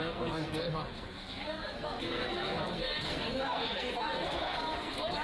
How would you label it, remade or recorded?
remade